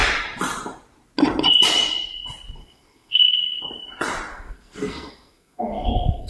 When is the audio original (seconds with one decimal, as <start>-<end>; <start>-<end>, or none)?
0.0-2.6; 3.6-4.3